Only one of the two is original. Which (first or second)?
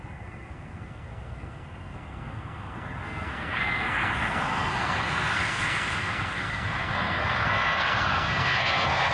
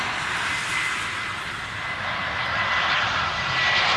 second